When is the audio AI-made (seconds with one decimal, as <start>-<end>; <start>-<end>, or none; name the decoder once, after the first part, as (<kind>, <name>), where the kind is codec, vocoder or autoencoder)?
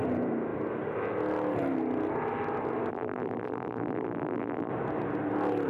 2.9-4.7 (vocoder, BigVGAN v2)